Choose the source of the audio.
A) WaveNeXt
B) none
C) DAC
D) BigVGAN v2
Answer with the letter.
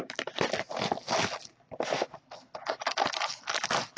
B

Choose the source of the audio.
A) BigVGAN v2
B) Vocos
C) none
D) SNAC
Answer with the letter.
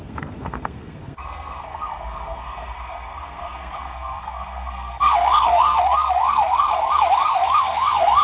D